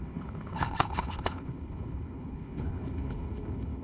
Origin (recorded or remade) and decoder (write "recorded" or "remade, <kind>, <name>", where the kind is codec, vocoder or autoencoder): remade, codec, HILCodec